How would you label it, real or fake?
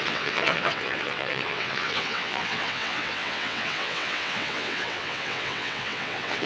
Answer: fake